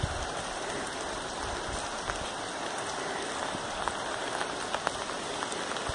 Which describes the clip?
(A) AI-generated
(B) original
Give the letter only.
B